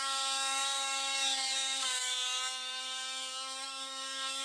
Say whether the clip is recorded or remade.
remade